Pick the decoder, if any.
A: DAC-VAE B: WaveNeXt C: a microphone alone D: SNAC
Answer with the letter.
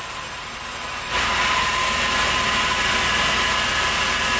C